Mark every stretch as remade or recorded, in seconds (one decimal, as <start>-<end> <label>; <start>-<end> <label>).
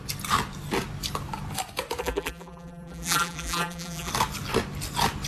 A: 0.0-2.0 recorded; 2.0-4.1 remade; 4.1-5.3 recorded